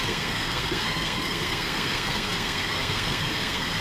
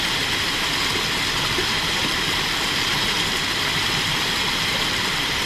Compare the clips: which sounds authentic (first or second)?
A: second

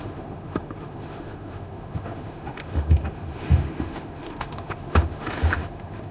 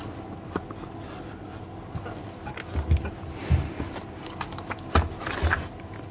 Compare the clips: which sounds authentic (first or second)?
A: second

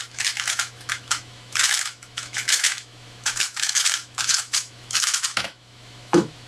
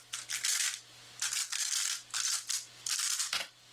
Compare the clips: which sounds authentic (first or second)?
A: second